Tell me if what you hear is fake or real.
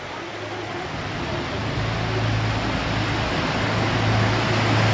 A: real